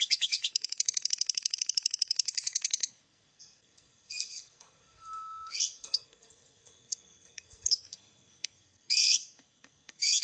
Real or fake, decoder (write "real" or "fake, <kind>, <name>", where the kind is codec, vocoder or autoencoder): fake, codec, SNAC